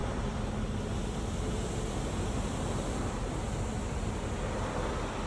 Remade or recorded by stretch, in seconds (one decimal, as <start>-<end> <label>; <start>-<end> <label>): 0.0-5.3 recorded